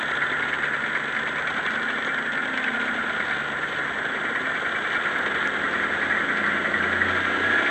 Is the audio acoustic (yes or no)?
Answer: yes